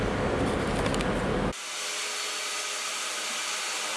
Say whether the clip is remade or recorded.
recorded